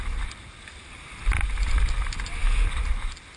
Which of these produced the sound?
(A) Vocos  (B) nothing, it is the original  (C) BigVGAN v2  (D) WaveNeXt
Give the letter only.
B